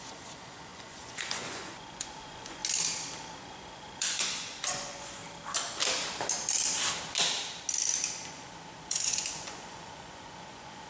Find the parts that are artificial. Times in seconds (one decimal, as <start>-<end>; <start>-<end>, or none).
0.0-2.6; 3.4-5.2; 8.3-10.9